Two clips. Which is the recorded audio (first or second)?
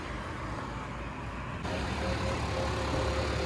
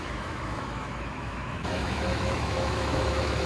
first